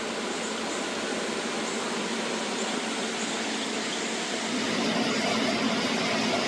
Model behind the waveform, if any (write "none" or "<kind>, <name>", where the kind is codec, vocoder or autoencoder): none